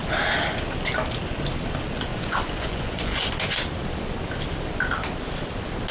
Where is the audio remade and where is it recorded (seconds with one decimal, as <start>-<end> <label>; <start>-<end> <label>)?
0.0-2.1 recorded; 2.1-3.3 remade; 3.3-5.9 recorded